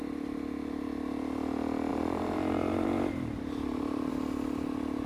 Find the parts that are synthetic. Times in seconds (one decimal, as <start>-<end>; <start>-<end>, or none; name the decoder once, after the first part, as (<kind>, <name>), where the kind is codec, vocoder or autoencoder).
1.9-4.1 (vocoder, BigVGAN v2)